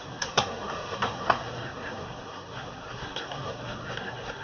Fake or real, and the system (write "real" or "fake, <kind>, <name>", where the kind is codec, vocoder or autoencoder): fake, codec, SNAC